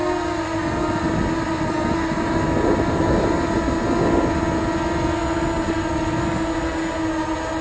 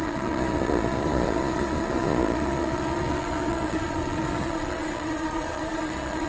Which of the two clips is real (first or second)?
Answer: first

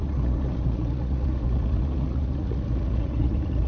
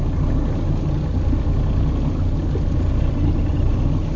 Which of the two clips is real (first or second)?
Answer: second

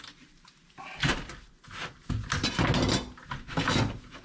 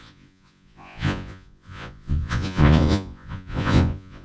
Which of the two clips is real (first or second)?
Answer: first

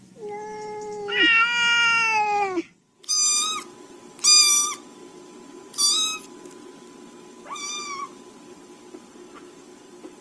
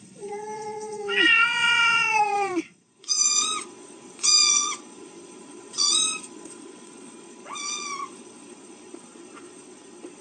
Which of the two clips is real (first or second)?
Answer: first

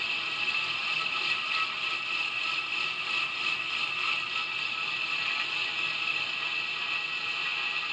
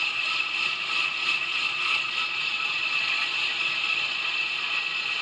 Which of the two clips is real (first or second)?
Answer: first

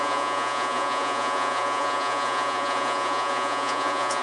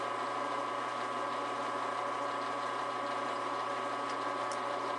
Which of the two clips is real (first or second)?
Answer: second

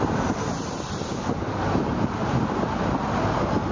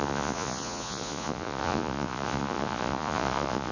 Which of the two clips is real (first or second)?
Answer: first